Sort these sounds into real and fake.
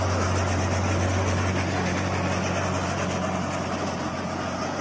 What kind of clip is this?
real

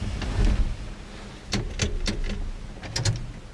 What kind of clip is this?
real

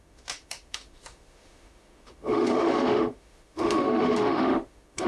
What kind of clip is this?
fake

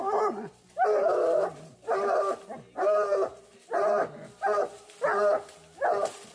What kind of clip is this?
real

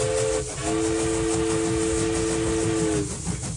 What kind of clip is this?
real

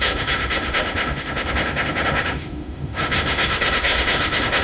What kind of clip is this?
fake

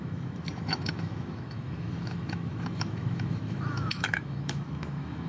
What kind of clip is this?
fake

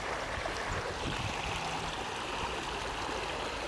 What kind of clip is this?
real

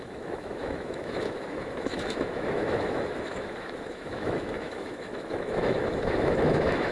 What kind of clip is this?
fake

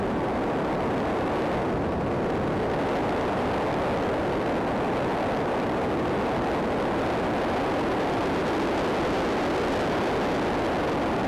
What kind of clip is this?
real